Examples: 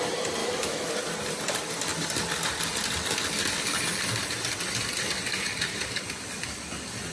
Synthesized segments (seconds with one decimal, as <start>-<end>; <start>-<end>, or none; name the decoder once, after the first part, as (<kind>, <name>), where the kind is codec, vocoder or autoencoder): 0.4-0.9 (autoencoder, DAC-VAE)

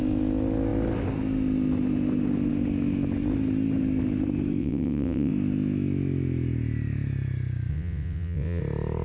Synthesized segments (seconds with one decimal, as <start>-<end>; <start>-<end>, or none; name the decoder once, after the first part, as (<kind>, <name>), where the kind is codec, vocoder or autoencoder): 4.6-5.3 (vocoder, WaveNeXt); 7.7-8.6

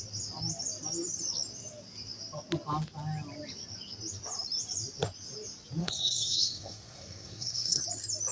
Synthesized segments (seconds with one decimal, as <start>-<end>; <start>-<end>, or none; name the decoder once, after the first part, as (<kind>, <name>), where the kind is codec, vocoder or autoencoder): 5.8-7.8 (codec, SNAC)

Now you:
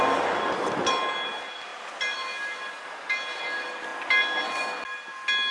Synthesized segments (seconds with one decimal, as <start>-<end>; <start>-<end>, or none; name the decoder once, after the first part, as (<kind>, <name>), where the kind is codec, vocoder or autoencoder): none

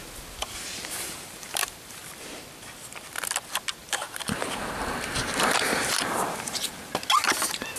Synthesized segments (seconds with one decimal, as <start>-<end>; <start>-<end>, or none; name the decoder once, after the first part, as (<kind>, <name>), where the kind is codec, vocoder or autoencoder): 0.4-2.0 (vocoder, BigVGAN v2); 3.8-6.7

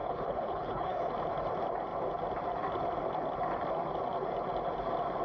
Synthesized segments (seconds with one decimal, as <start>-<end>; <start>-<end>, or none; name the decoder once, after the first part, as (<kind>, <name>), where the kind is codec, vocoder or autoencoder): 0.0-1.1 (codec, HILCodec)